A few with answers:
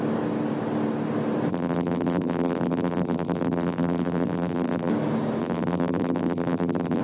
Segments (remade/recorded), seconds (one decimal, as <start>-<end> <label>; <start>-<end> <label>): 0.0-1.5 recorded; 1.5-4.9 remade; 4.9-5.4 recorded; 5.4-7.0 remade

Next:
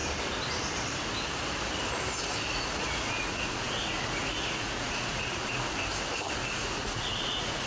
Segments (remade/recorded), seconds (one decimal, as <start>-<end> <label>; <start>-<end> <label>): 0.0-2.5 recorded; 2.5-5.7 remade; 5.7-6.4 recorded; 6.4-7.7 remade

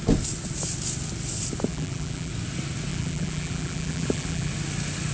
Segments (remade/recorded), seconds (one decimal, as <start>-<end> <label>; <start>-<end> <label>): 0.0-1.7 recorded; 1.7-2.3 remade; 2.3-2.9 recorded; 2.9-4.5 remade; 4.5-5.1 recorded

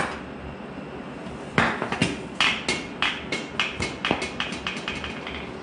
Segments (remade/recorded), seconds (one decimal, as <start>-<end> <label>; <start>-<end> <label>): 0.0-5.6 recorded

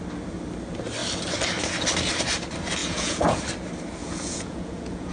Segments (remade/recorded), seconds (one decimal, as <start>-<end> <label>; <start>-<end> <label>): 0.0-2.8 recorded; 2.8-3.4 remade; 3.4-4.0 recorded; 4.0-5.1 remade

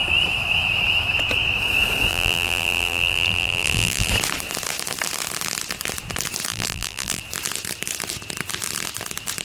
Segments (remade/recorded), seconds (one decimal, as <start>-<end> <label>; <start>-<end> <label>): 0.0-2.1 recorded; 2.1-4.1 remade; 4.1-6.5 recorded; 6.5-7.2 remade; 7.2-9.4 recorded

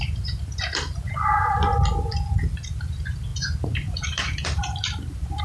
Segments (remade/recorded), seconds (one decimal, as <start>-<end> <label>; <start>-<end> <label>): 0.0-1.7 remade; 1.7-2.7 recorded; 2.7-5.4 remade